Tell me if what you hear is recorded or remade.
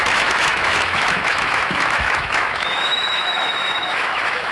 remade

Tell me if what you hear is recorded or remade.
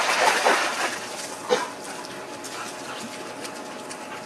recorded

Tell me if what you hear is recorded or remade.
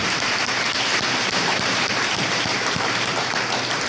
remade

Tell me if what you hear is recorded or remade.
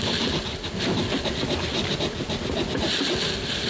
recorded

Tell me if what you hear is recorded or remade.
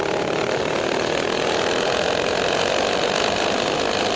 recorded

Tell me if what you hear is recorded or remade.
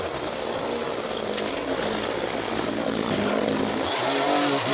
recorded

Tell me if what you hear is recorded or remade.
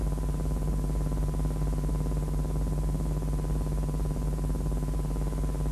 recorded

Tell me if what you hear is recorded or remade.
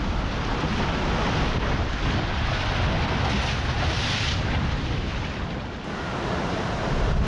recorded